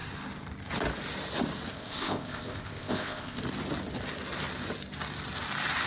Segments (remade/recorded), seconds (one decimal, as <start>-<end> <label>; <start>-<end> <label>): 0.0-1.7 recorded; 1.7-3.4 remade; 3.4-5.9 recorded